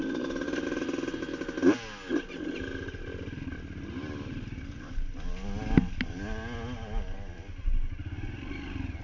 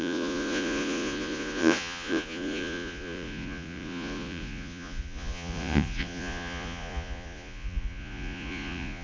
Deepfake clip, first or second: second